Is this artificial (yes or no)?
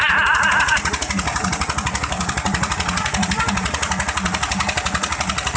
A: yes